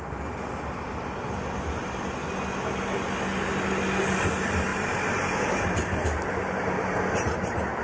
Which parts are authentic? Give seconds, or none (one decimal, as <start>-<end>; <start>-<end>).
0.0-7.8